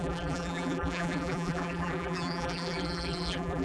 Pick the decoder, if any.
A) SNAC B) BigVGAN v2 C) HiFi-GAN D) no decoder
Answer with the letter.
B